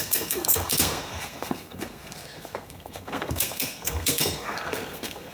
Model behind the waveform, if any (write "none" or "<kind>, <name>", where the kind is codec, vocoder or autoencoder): codec, SNAC